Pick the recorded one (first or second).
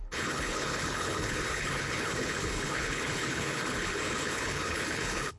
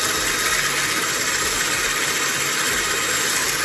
second